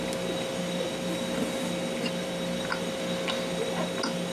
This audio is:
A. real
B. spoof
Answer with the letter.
A